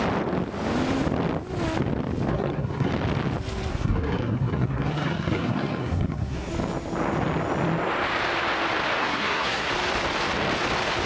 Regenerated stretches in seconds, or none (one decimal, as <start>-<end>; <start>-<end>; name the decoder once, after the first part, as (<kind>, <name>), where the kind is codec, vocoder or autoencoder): 2.3-2.9 (codec, SNAC); 3.7-6.5; 9.0-9.7